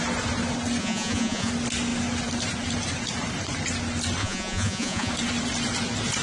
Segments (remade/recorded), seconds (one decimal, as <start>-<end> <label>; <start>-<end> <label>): 0.0-0.8 recorded; 0.8-1.5 remade; 1.5-4.2 recorded; 4.2-5.1 remade; 5.1-6.2 recorded